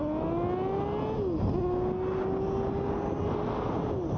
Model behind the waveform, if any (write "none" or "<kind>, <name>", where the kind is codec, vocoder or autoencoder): none